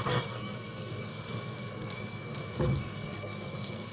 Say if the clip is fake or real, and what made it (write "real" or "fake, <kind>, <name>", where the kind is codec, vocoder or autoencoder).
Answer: fake, codec, SNAC